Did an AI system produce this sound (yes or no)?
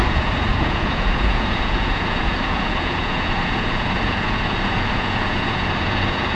yes